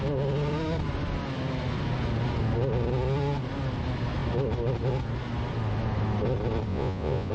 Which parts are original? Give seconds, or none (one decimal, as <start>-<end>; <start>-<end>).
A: 0.0-6.7